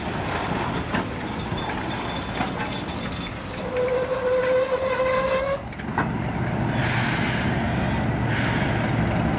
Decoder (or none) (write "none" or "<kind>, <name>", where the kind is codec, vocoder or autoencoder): none